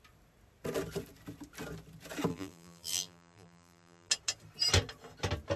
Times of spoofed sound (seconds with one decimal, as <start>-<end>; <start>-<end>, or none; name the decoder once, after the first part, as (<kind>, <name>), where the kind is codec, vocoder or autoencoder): 2.3-4.1 (vocoder, BigVGAN v2)